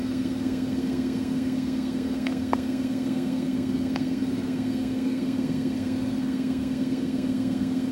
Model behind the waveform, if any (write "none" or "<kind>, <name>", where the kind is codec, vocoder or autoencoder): codec, SNAC